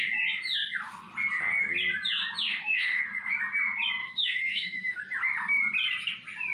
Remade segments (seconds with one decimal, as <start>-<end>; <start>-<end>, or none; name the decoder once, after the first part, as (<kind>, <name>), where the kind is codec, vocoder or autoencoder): 2.5-3.0 (autoencoder, DAC-VAE); 4.0-5.0